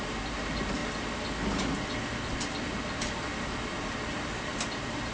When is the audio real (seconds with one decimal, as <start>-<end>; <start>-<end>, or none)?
0.8-3.9